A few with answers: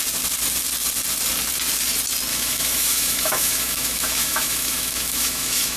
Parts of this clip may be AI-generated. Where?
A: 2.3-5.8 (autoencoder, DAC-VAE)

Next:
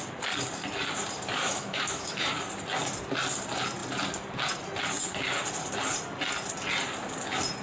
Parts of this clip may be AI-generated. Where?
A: 1.4-2.3 (autoencoder, DAC-VAE)